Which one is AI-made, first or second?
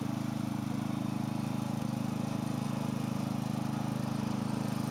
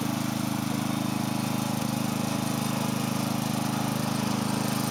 first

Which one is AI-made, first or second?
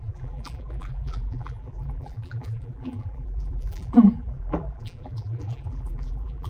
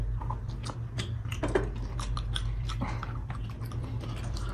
first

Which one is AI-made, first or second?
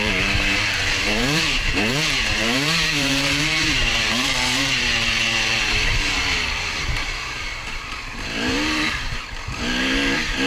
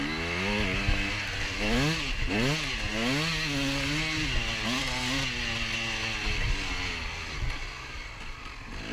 first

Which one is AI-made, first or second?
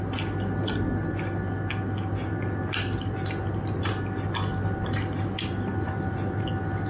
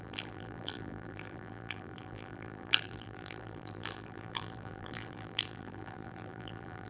second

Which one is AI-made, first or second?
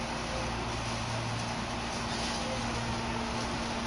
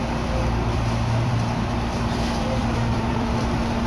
second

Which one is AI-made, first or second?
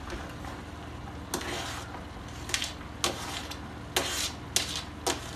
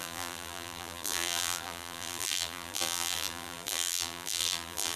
second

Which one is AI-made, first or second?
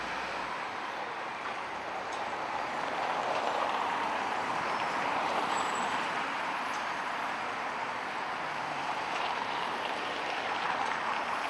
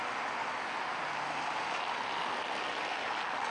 first